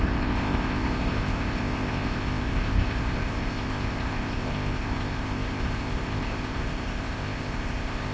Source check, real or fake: fake